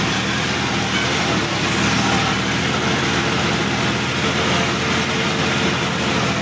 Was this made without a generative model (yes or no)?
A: yes